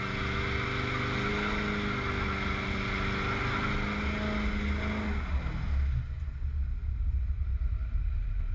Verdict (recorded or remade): recorded